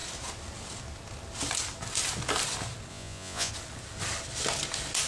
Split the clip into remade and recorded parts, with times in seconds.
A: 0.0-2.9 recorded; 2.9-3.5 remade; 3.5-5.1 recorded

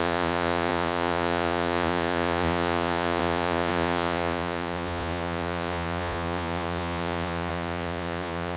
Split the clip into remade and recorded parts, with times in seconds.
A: 0.0-8.6 remade

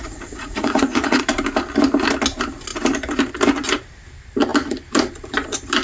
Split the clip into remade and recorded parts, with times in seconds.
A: 0.0-1.2 remade; 1.2-5.8 recorded